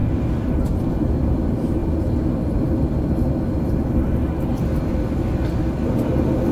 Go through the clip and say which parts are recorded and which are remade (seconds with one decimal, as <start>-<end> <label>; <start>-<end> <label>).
0.0-6.5 recorded